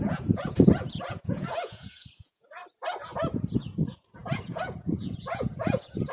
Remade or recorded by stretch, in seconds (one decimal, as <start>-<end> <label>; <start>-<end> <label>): 0.0-2.6 remade; 2.6-3.5 recorded; 3.5-6.1 remade